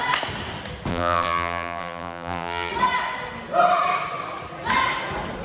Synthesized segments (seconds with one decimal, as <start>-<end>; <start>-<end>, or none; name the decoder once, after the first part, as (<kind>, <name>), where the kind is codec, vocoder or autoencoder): 0.9-2.7 (vocoder, BigVGAN v2)